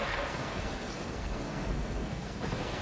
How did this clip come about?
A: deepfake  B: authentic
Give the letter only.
A